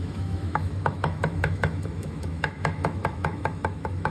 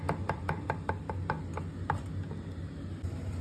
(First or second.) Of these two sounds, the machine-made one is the first